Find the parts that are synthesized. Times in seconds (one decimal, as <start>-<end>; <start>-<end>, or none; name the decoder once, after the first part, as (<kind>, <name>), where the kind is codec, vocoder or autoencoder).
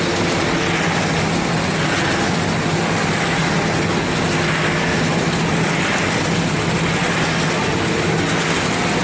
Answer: none